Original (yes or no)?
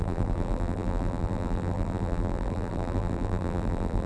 no